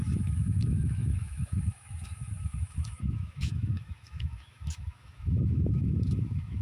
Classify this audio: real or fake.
fake